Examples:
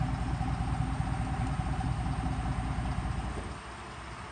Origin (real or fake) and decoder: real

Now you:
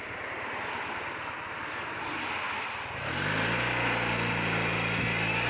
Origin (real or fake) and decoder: real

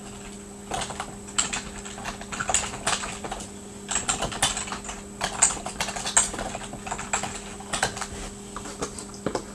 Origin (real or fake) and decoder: real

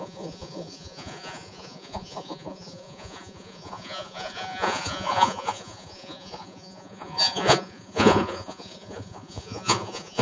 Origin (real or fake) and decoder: fake, vocoder, Vocos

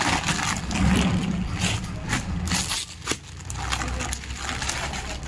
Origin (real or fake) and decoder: real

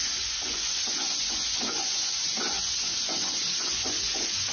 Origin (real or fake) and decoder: fake, vocoder, Vocos